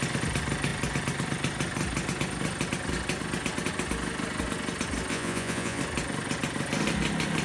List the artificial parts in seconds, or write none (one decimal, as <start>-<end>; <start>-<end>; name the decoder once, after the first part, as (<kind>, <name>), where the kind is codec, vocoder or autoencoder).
5.1-5.8 (vocoder, Vocos)